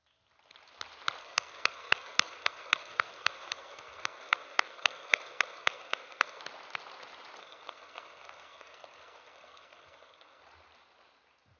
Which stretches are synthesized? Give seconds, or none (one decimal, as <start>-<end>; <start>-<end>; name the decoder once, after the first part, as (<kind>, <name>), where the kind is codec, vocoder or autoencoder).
1.2-6.4 (codec, SNAC); 7.4-10.4